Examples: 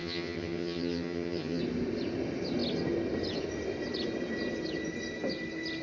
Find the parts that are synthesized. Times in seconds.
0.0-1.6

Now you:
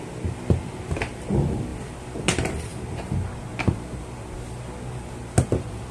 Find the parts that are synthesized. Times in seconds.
none

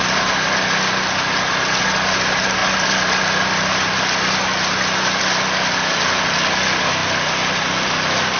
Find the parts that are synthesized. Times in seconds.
none

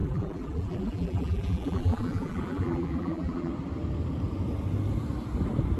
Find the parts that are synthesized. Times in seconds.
0.0-3.5

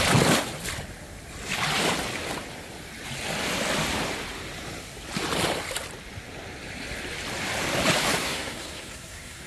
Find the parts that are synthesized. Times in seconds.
8.2-9.5

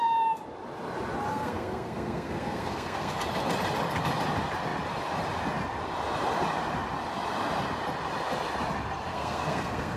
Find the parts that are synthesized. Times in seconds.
1.3-3.1; 9.1-10.0